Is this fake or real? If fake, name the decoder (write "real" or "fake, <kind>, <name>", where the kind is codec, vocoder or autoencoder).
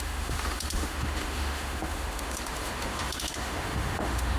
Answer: fake, autoencoder, DAC-VAE